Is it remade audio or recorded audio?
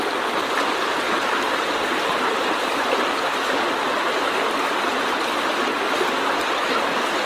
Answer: recorded